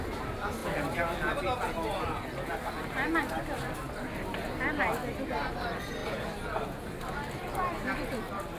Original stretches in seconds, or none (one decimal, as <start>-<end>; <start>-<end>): 0.0-8.6